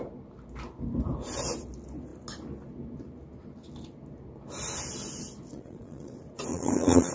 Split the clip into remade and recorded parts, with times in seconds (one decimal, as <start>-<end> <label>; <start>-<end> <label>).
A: 0.0-5.5 recorded; 5.5-6.1 remade; 6.1-6.5 recorded; 6.5-7.1 remade